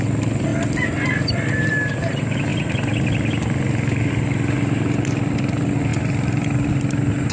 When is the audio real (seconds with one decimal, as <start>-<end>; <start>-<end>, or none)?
0.0-7.3